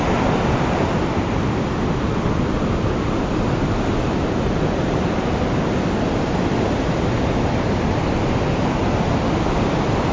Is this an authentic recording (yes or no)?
yes